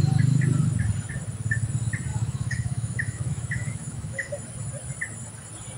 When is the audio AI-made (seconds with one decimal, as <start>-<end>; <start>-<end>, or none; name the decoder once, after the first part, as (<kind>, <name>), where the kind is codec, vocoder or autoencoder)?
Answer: 2.1-4.3 (autoencoder, DAC-VAE)